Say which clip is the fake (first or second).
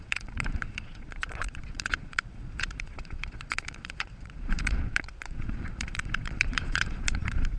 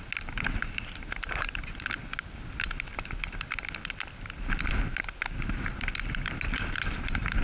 first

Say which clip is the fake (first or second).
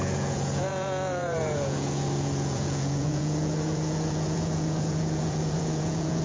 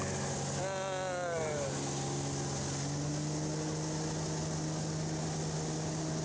first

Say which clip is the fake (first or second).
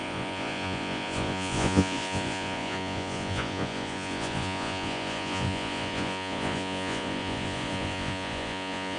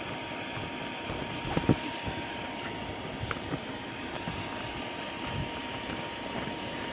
first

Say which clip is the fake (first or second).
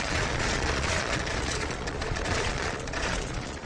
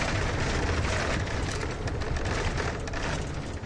first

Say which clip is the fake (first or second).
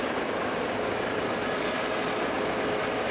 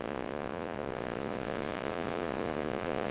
second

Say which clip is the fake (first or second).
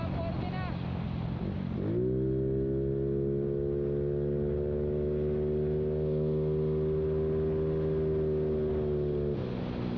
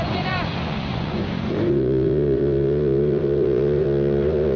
second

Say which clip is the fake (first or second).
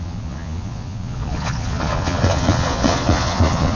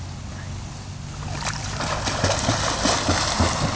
first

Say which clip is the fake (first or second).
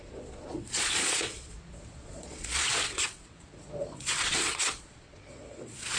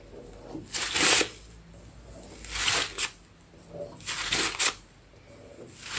first